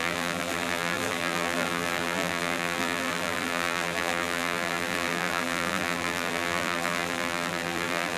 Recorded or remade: remade